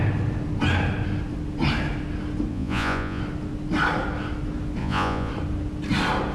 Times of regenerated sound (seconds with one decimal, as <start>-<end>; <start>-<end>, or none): 2.5-3.2; 4.8-5.3